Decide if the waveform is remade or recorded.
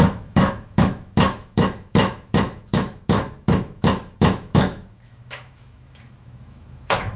remade